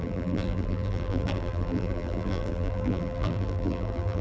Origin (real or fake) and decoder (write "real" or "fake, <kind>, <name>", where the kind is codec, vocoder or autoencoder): fake, vocoder, BigVGAN v2